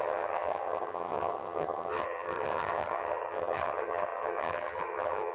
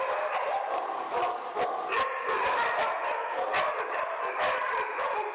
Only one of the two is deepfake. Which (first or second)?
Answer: first